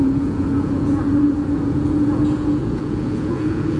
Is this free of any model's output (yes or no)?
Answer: no